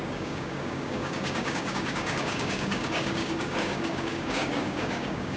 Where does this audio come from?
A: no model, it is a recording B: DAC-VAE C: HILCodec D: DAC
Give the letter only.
D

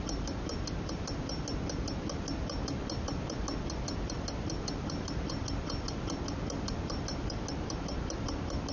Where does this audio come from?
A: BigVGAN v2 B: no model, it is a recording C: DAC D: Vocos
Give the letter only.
B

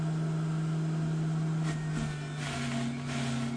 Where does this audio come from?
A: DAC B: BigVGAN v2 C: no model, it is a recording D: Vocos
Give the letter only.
C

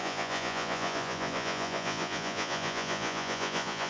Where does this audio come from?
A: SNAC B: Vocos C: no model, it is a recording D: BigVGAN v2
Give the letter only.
B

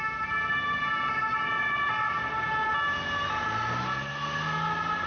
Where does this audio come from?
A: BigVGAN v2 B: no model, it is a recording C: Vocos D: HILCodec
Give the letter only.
B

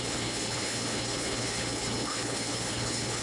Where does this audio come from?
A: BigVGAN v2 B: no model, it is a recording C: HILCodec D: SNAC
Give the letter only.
C